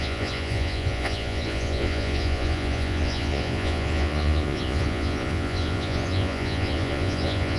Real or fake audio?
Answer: fake